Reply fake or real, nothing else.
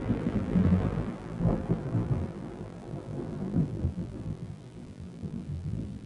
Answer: fake